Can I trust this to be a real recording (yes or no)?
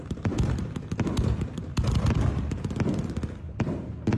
yes